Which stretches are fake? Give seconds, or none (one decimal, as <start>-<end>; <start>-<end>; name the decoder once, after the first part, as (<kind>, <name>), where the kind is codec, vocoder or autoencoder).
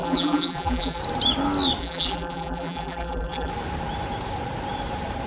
0.0-1.0 (vocoder, BigVGAN v2); 1.8-3.5